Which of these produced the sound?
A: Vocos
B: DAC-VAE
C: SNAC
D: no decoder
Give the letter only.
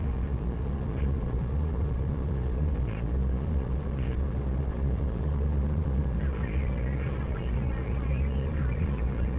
A